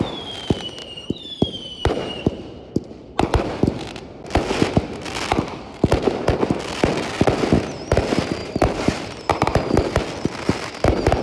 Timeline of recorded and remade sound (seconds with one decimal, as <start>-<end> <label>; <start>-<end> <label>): 0.0-0.8 recorded; 0.8-2.7 remade; 2.7-8.4 recorded; 8.4-9.8 remade; 9.8-11.2 recorded